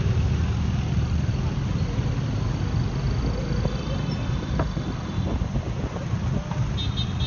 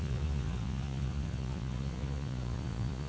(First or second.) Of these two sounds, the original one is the first